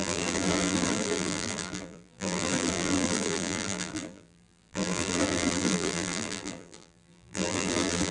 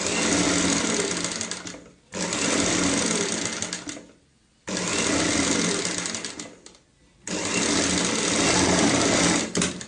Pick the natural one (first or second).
second